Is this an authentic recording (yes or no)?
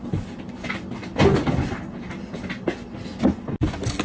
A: yes